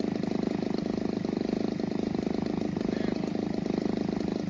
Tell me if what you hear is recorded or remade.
recorded